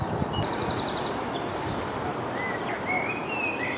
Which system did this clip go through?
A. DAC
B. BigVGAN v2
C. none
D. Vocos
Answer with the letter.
C